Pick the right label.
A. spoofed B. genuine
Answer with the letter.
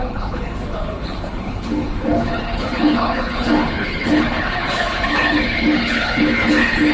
A